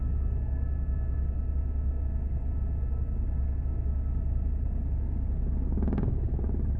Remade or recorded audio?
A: recorded